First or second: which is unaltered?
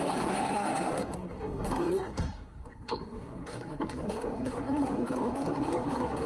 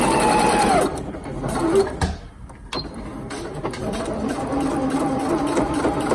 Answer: second